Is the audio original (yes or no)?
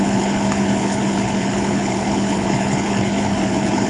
no